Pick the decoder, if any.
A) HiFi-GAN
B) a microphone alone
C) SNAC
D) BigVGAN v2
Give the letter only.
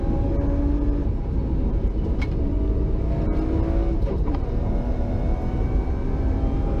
B